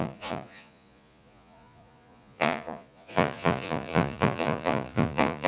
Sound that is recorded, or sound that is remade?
remade